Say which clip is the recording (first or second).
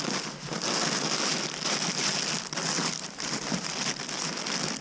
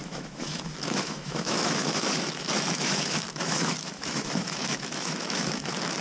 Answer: first